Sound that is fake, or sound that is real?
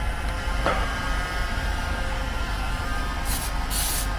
real